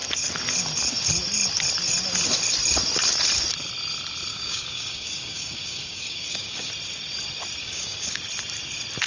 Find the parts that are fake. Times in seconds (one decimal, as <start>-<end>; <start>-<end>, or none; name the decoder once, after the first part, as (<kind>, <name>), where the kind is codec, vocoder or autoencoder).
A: 4.3-6.7 (codec, DAC); 7.6-8.2